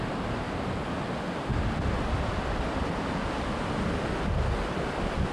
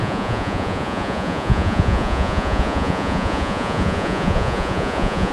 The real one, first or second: first